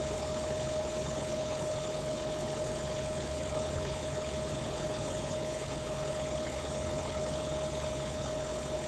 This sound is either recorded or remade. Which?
remade